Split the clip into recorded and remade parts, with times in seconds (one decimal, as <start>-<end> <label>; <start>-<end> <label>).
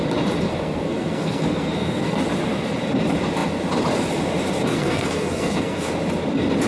0.0-0.5 recorded; 0.5-2.2 remade; 2.2-4.7 recorded; 4.7-5.9 remade; 5.9-6.7 recorded